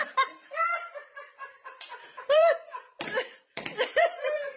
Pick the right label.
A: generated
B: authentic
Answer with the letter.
A